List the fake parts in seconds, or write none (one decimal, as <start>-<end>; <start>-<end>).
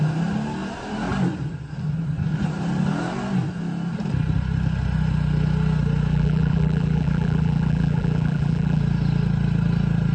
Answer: 6.1-8.8